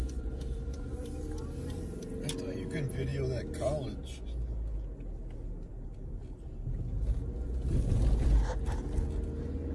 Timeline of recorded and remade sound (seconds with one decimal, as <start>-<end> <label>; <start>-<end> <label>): 0.0-9.7 recorded